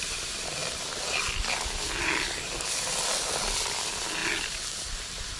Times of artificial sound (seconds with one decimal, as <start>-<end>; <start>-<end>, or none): none

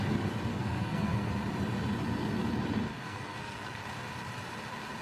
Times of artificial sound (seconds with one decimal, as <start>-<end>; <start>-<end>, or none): 0.5-1.3; 2.9-3.8

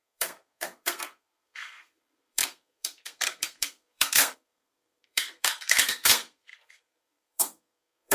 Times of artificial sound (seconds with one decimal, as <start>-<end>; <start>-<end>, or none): 0.0-8.1

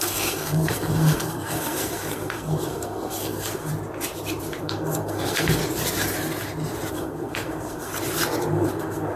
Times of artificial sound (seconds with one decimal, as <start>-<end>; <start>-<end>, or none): 0.0-3.7; 4.6-5.6; 6.9-7.9; 8.5-9.2

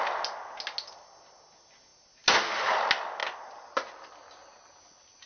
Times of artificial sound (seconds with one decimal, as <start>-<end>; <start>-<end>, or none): none

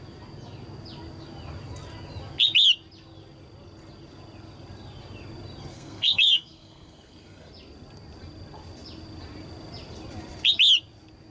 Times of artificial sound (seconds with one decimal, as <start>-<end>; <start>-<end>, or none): 5.7-7.5

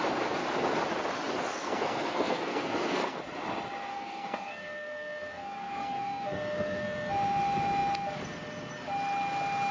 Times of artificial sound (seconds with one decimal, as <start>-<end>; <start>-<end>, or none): 1.5-3.2; 3.9-7.1